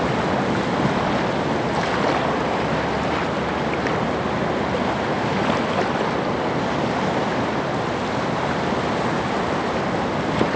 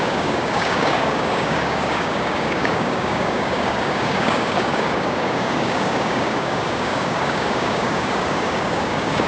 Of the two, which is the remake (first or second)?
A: second